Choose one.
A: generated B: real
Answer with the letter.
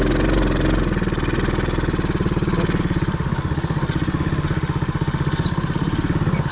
B